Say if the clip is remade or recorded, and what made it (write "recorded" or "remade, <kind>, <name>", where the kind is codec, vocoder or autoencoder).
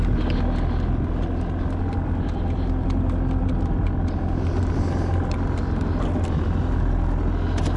recorded